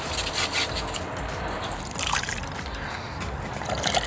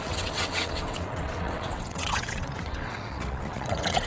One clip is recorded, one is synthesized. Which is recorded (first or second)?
first